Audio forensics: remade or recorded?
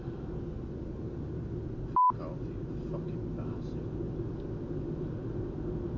recorded